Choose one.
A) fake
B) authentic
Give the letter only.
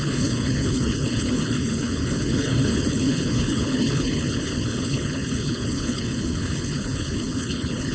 A